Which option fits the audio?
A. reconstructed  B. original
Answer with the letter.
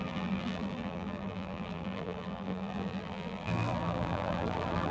A